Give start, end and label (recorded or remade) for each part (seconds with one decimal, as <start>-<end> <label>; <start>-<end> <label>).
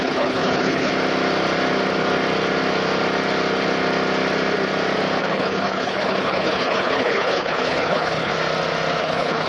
0.0-0.9 remade; 0.9-5.2 recorded; 5.2-8.3 remade; 8.3-9.0 recorded; 9.0-9.5 remade